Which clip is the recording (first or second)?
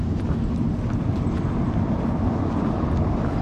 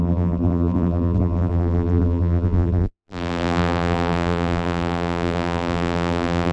first